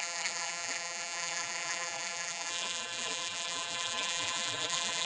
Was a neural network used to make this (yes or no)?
yes